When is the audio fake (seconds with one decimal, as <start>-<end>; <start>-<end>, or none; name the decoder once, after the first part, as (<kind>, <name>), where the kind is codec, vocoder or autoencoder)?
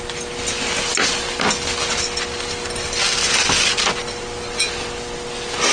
none